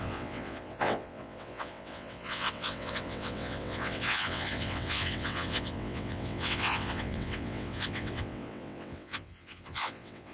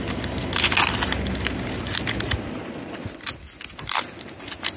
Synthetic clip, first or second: first